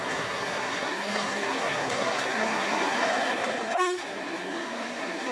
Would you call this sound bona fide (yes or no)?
no